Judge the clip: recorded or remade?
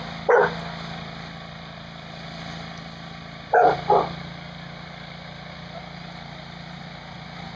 recorded